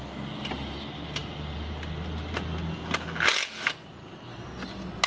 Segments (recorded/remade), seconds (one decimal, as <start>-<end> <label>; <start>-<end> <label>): 0.0-5.1 recorded